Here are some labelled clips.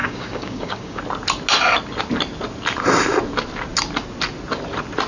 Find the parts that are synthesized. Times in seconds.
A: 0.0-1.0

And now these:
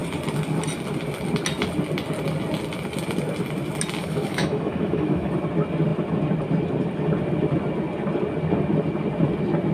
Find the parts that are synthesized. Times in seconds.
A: 4.0-5.3

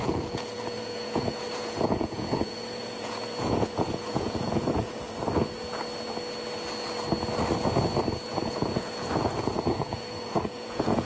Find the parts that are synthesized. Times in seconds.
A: 0.0-4.9; 8.3-11.1

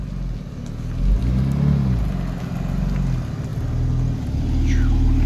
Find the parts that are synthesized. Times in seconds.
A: none

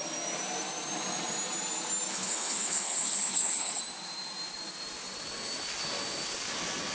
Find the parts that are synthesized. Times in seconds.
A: 2.1-3.8

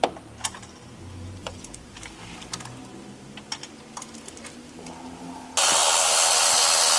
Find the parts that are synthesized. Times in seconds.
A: 1.4-1.9